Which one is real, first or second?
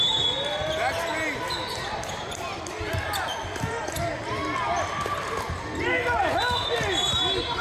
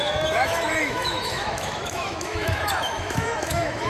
first